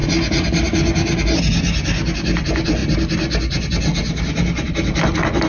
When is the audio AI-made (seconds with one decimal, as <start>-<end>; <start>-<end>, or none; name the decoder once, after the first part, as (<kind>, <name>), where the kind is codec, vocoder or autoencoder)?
none